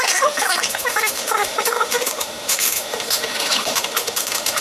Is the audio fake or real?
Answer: fake